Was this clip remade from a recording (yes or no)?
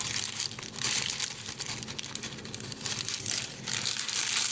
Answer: no